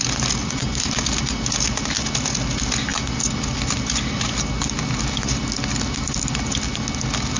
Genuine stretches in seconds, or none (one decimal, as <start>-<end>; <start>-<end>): 0.0-7.4